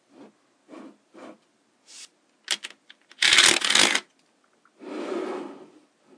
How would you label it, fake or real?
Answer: real